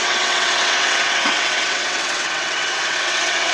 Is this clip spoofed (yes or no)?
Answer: yes